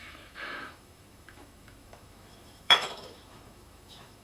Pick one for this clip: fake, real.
fake